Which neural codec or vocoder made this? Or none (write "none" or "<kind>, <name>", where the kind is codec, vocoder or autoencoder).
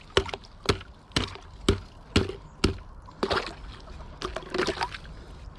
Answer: none